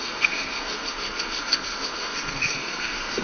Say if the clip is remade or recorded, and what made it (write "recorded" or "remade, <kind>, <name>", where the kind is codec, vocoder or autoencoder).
remade, codec, SNAC